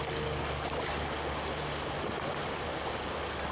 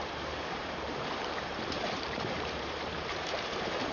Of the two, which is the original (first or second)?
first